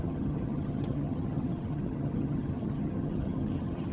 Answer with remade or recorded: remade